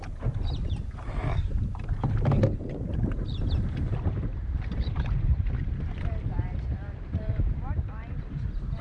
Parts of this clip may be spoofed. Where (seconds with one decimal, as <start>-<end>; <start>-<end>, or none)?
0.0-8.8